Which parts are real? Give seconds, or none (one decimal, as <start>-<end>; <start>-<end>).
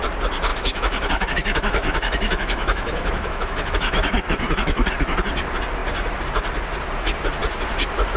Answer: 0.0-0.5; 4.9-8.2